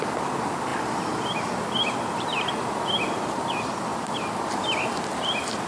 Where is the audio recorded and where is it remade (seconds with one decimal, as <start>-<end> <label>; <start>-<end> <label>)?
0.0-0.7 recorded; 0.7-2.7 remade; 2.7-3.9 recorded; 3.9-4.7 remade; 4.7-5.7 recorded